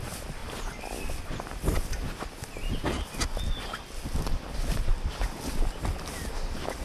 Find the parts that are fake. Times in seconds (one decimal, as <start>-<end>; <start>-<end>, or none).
none